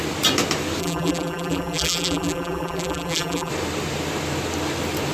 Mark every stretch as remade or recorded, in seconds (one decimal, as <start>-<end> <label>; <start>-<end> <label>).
0.0-0.8 recorded; 0.8-3.5 remade; 3.5-5.1 recorded

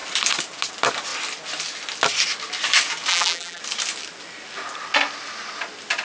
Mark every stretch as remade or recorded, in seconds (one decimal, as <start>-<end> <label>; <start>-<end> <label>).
0.0-3.1 recorded; 3.1-3.6 remade; 3.6-6.0 recorded

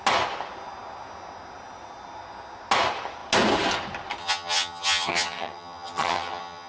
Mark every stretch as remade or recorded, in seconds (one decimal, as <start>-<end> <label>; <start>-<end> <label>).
0.0-4.2 recorded; 4.2-6.7 remade

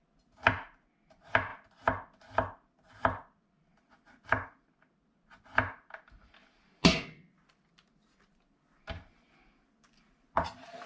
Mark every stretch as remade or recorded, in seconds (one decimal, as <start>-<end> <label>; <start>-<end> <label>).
0.0-10.9 recorded

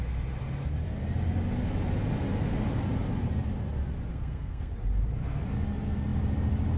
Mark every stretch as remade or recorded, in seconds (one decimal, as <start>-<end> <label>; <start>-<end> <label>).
0.0-4.1 recorded; 4.1-4.7 remade; 4.7-6.8 recorded

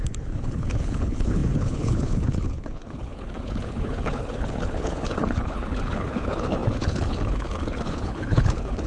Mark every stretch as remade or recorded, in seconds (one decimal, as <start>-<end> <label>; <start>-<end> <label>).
0.0-8.9 remade